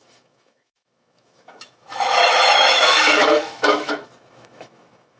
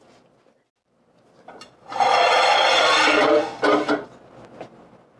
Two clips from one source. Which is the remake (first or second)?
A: first